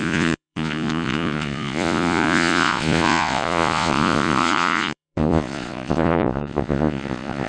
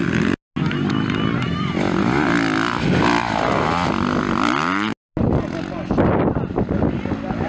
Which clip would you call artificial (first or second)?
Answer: first